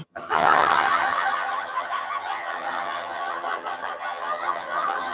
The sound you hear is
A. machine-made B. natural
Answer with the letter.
A